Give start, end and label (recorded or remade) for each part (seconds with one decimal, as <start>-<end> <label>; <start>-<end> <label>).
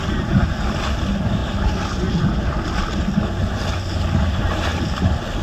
0.0-5.4 recorded